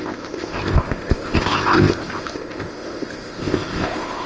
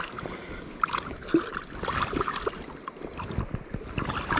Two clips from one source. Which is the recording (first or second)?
second